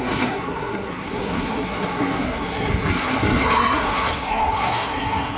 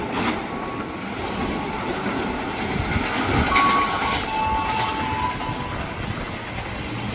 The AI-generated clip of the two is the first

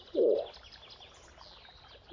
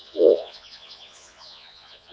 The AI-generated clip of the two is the second